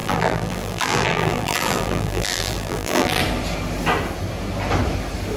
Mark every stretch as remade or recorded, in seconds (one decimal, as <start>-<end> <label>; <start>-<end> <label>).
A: 0.0-3.2 remade; 3.2-5.4 recorded